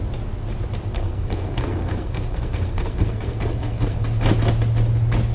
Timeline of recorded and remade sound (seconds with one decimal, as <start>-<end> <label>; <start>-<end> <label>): 0.0-0.9 recorded; 0.9-4.0 remade; 4.0-5.3 recorded

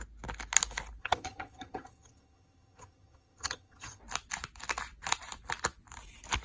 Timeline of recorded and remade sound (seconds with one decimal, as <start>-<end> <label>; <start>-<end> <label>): 0.0-1.0 recorded; 1.0-4.0 remade; 4.0-6.4 recorded

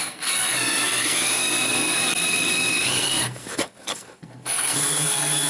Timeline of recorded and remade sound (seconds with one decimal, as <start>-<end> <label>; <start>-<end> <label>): 0.0-5.5 remade